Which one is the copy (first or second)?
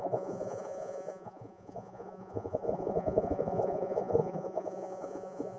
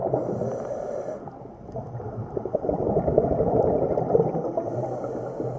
first